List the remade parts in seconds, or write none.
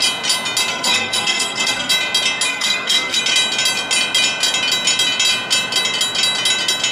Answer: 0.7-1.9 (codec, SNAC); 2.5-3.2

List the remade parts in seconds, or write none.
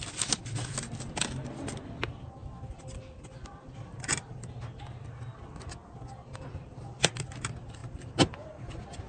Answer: none